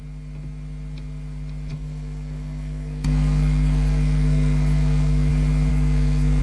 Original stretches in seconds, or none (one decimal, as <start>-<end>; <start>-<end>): 0.0-1.7; 5.3-5.7